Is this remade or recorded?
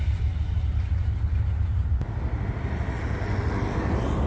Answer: recorded